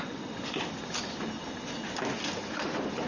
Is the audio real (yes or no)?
yes